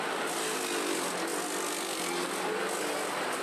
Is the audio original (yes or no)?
yes